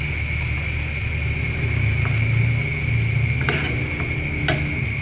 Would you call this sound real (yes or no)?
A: yes